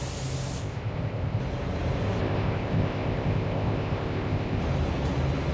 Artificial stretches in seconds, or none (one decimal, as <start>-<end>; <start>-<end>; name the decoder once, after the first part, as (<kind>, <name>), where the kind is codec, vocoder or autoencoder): 0.6-1.4 (codec, ZipCodec); 2.2-4.6